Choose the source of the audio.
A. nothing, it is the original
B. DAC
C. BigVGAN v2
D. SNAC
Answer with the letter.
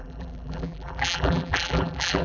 C